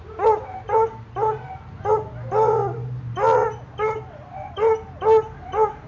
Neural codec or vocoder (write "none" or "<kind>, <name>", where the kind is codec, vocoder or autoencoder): none